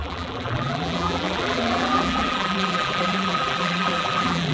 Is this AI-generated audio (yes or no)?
yes